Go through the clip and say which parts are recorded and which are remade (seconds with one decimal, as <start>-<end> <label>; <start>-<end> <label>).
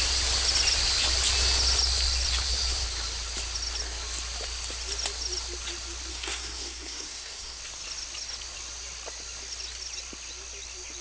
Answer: 0.0-6.1 recorded; 6.1-7.6 remade; 7.6-11.0 recorded